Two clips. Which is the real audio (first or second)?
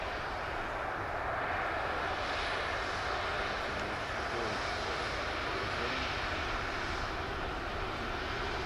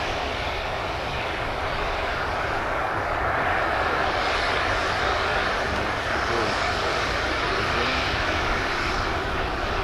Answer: first